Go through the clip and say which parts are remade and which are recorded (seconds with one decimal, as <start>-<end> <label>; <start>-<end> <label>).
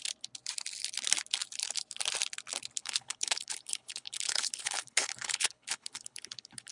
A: 0.0-2.8 recorded; 2.8-6.7 remade